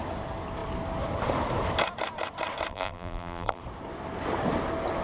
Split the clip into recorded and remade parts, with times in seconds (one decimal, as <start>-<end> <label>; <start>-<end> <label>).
0.0-2.7 recorded; 2.7-3.6 remade; 3.6-5.0 recorded